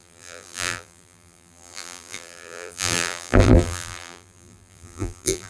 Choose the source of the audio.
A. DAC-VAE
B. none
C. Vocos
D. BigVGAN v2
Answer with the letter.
D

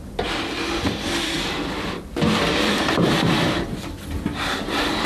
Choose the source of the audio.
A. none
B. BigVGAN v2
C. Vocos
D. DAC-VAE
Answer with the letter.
B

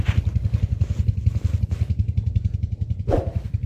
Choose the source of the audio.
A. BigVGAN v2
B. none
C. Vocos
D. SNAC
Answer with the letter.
B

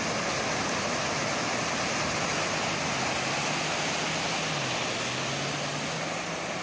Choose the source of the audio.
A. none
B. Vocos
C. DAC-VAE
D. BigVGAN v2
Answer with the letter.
A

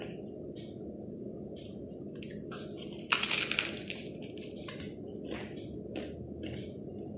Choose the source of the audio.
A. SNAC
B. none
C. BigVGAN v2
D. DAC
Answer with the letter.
B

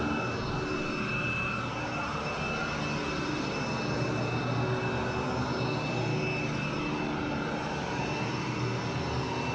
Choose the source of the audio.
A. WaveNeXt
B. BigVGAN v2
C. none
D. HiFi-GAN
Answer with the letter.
C